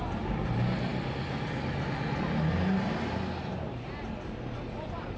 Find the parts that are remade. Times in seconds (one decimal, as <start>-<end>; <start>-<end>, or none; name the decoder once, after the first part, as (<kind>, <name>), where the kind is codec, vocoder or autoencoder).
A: 4.0-5.2 (vocoder, BigVGAN v2)